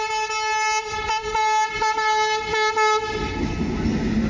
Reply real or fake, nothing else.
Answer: real